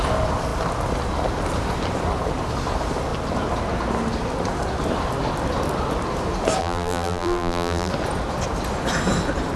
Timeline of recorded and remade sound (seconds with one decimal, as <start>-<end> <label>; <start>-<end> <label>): 0.0-6.6 recorded; 6.6-7.9 remade; 7.9-9.6 recorded